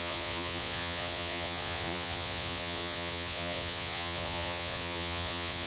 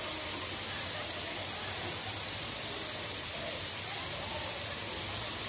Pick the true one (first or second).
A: second